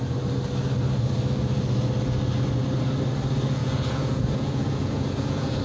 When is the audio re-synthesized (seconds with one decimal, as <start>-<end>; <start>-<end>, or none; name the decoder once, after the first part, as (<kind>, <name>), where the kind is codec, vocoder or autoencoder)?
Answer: 3.6-5.6 (vocoder, Vocos)